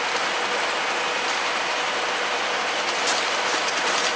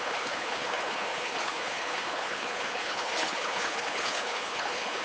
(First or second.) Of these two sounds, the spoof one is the second